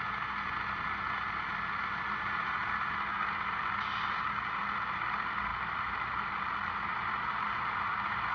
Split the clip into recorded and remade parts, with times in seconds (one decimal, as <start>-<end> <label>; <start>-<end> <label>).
0.0-2.6 remade; 2.6-4.0 recorded; 4.0-8.3 remade